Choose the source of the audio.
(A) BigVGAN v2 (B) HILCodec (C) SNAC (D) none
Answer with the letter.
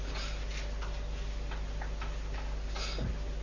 D